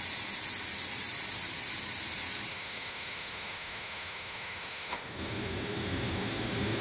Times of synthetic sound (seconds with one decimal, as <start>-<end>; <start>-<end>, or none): 2.5-6.8